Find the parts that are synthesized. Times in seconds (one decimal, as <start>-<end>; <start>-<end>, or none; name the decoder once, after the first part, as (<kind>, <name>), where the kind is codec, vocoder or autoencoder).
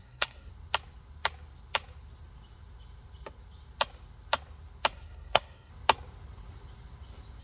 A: 0.0-0.5 (codec, SNAC); 4.9-5.7